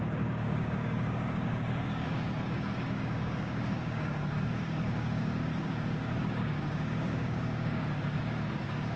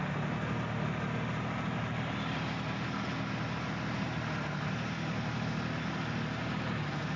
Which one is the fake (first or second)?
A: first